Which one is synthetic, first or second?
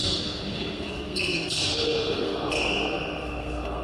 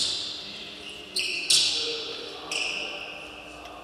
first